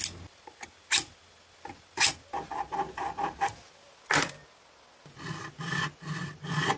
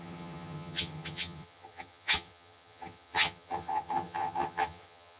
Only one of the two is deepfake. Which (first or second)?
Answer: second